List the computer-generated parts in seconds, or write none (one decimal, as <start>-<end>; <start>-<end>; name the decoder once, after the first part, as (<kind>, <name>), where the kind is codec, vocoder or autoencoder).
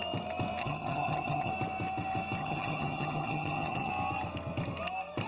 0.6-1.5 (vocoder, HiFi-GAN); 2.4-3.9